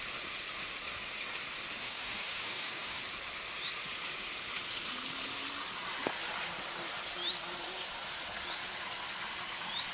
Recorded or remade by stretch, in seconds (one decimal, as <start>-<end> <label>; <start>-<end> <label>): 0.0-1.8 recorded; 1.8-3.0 remade; 3.0-9.9 recorded